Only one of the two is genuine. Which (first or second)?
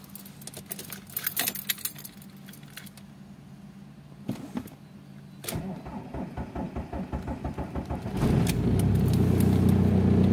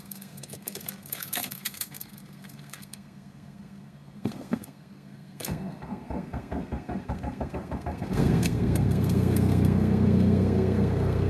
first